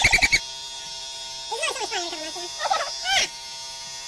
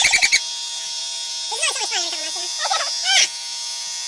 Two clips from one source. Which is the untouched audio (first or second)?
first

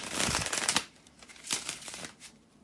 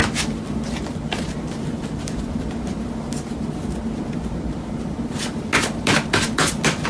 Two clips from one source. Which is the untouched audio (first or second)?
second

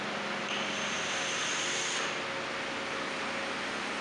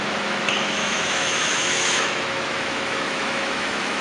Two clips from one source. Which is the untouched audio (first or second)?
first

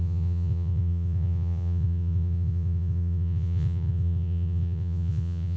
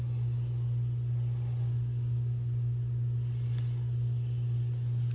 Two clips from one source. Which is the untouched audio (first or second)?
second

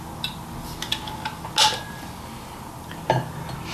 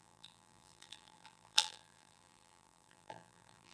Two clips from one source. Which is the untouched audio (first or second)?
first